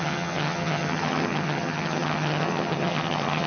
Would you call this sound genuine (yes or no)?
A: no